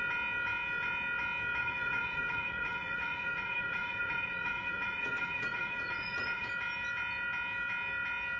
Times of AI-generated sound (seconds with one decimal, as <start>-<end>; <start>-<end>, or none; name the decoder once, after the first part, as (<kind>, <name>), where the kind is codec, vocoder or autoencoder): 1.6-6.5 (vocoder, Vocos)